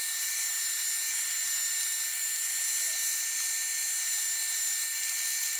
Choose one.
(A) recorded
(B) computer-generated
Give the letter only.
A